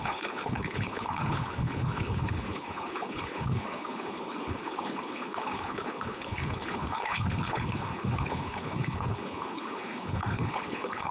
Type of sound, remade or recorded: remade